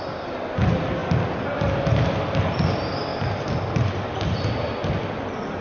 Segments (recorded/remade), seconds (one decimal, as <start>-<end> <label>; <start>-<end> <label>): 0.0-5.6 recorded